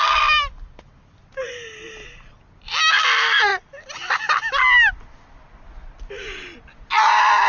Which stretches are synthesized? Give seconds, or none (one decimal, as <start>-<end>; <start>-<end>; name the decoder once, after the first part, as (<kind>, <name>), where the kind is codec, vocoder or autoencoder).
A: none